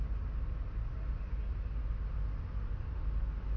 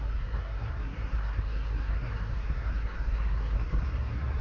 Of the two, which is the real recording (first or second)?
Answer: first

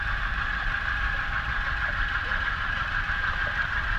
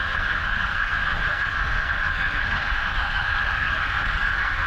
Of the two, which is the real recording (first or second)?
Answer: first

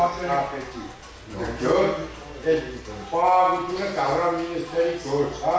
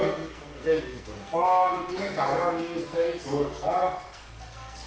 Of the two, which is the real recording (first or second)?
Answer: first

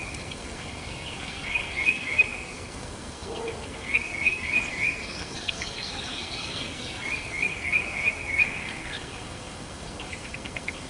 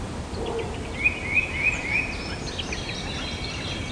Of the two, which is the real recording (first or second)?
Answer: second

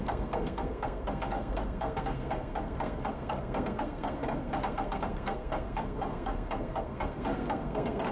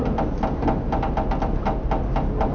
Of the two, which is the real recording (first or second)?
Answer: second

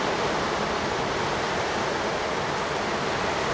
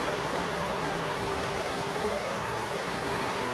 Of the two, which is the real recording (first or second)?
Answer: first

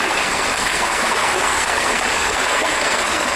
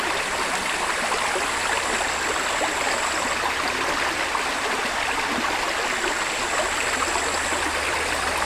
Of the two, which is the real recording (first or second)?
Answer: second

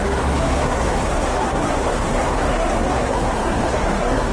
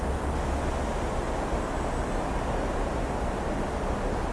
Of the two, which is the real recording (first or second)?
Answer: second